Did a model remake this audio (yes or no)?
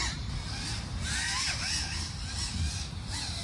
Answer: no